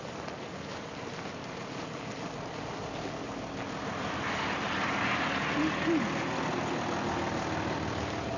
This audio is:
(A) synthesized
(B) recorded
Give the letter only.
B